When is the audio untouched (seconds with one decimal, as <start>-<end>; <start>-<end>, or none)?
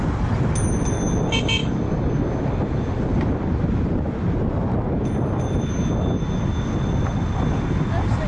0.0-1.6; 2.1-8.3